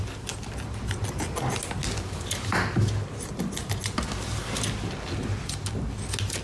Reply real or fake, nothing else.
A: real